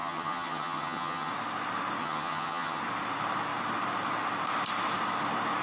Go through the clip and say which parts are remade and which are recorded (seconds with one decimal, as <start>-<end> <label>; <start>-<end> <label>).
0.0-1.3 remade; 1.3-2.0 recorded; 2.0-2.8 remade; 2.8-5.6 recorded